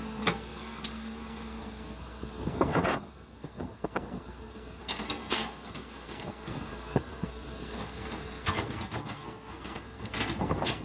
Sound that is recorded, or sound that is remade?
remade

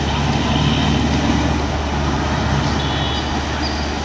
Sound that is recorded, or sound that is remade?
recorded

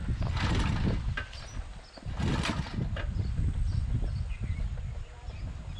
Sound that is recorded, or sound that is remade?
recorded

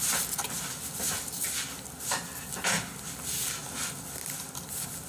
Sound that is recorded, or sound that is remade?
recorded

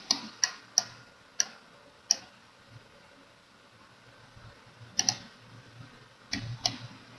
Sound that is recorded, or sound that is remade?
recorded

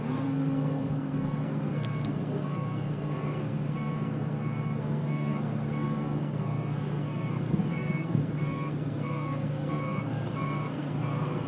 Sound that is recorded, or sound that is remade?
remade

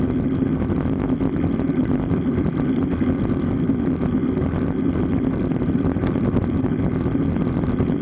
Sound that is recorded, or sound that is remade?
recorded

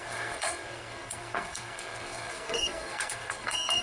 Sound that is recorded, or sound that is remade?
remade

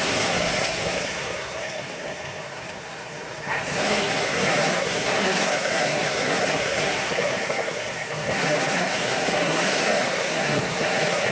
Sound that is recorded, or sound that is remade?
remade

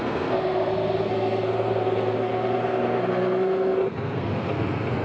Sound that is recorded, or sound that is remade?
remade